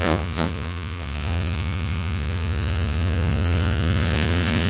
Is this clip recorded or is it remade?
remade